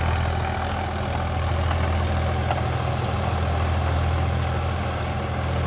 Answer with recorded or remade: recorded